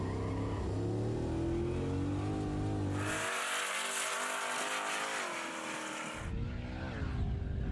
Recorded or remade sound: recorded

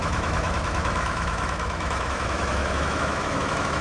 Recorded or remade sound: remade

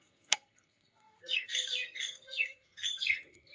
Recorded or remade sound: remade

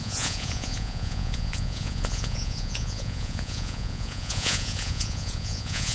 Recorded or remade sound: remade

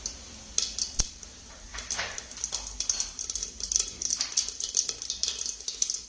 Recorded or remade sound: recorded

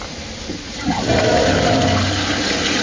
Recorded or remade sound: recorded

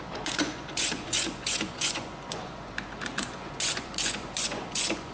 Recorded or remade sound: remade